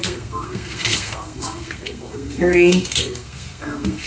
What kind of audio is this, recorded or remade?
remade